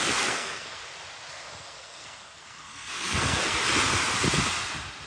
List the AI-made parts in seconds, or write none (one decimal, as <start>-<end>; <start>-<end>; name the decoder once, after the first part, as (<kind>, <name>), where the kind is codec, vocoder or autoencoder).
0.0-0.8 (codec, SNAC); 1.3-3.6